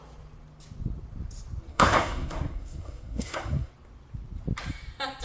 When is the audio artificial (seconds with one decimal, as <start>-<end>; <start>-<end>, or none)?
1.7-3.7